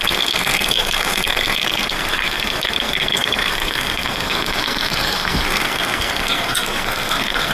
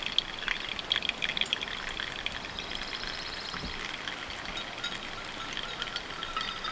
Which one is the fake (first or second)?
first